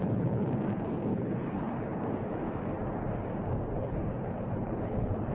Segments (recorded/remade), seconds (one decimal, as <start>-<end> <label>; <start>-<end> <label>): 0.0-0.5 remade; 0.5-1.1 recorded; 1.1-2.0 remade; 2.0-3.8 recorded; 3.8-5.3 remade